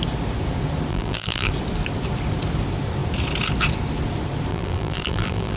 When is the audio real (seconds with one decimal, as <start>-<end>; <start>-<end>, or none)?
0.0-0.9; 1.5-4.5